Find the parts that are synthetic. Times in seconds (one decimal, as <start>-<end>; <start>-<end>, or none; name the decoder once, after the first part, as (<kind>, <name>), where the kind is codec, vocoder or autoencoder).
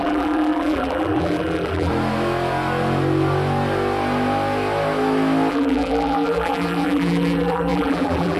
0.0-1.9 (vocoder, BigVGAN v2); 5.5-8.4